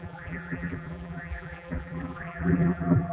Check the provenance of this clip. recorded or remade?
remade